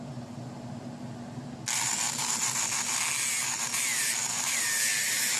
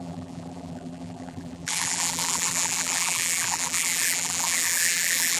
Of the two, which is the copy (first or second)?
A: second